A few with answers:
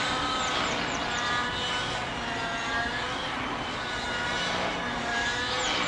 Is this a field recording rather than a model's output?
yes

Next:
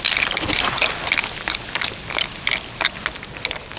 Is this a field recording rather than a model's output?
yes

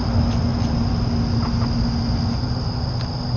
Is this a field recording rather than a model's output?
yes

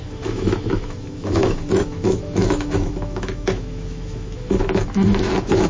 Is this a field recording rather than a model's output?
no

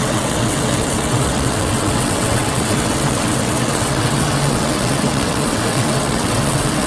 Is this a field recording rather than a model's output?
no